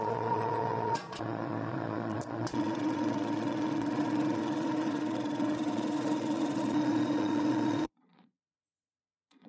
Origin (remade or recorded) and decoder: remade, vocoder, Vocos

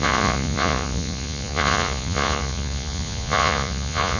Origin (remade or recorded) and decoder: remade, vocoder, Vocos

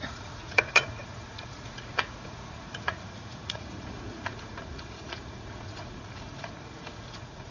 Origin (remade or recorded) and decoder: remade, vocoder, Vocos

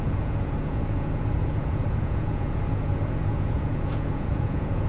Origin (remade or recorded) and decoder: remade, vocoder, Vocos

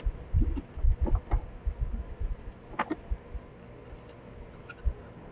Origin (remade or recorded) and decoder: recorded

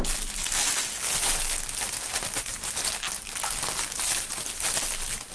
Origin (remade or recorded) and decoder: recorded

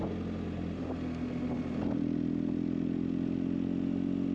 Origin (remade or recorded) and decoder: recorded